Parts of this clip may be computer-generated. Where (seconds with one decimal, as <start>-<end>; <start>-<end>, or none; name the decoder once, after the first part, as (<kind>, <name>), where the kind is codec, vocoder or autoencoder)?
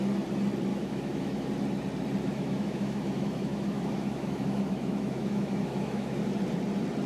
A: 0.7-1.5 (autoencoder, DAC-VAE); 2.2-6.2